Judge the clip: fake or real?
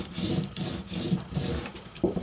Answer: real